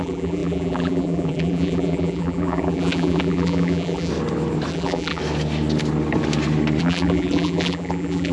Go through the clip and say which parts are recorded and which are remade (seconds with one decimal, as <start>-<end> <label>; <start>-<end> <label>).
0.0-4.1 remade; 4.1-4.7 recorded; 4.7-5.2 remade; 5.2-6.8 recorded; 6.8-8.3 remade